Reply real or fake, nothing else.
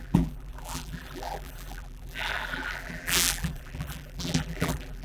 fake